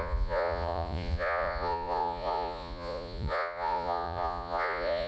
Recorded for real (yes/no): no